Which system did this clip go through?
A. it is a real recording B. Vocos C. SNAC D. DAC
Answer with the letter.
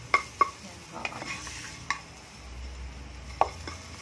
A